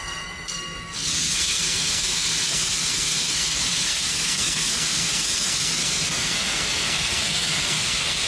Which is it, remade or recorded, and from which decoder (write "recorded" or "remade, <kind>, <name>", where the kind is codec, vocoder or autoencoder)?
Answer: remade, codec, SNAC